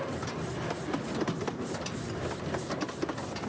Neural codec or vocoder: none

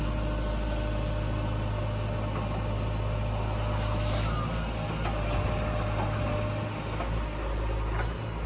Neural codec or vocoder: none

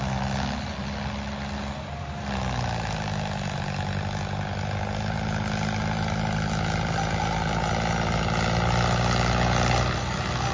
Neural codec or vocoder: none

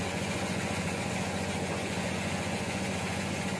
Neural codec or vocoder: vocoder, Vocos